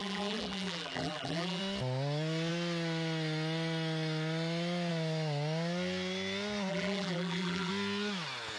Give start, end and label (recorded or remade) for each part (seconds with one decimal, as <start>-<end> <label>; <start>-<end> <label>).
0.0-1.6 remade; 1.6-6.7 recorded; 6.7-7.7 remade; 7.7-8.6 recorded